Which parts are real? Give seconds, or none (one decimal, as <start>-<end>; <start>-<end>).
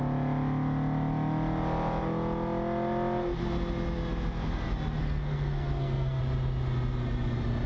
0.0-5.0; 6.2-7.7